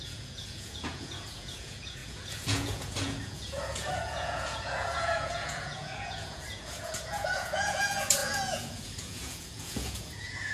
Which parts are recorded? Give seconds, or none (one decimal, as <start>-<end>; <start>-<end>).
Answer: none